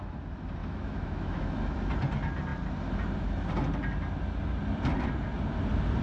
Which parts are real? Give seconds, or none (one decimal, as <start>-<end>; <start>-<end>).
0.0-0.6; 1.9-6.0